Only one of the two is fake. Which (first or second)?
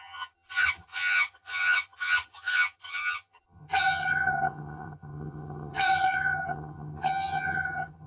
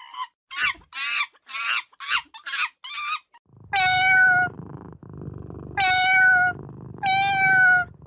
first